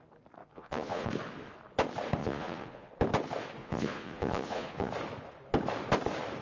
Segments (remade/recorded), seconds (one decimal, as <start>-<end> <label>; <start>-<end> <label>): 0.0-0.4 recorded; 0.4-1.1 remade; 1.1-2.2 recorded; 2.2-2.9 remade; 2.9-3.6 recorded; 3.6-4.9 remade; 4.9-6.4 recorded